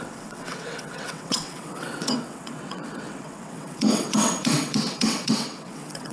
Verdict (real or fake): fake